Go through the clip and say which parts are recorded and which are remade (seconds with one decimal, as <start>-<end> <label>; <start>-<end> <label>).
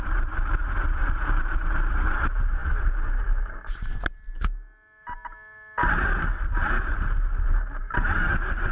0.0-8.7 recorded